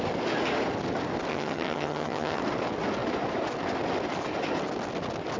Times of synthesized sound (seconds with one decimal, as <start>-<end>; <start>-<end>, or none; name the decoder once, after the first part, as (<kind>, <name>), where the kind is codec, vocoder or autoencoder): 1.3-2.4 (vocoder, HiFi-GAN)